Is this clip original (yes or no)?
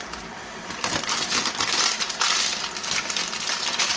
yes